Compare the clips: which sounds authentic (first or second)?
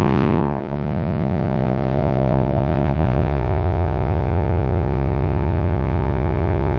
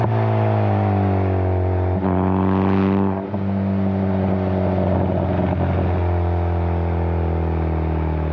second